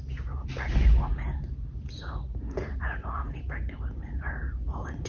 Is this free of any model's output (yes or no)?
yes